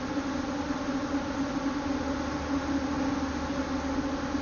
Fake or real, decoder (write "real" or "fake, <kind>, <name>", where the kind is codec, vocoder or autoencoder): real